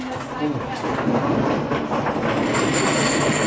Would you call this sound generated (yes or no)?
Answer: no